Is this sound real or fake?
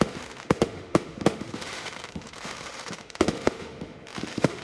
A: fake